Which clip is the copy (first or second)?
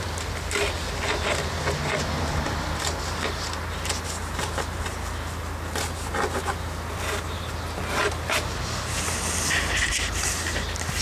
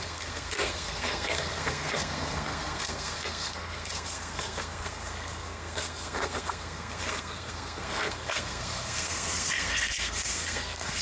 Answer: second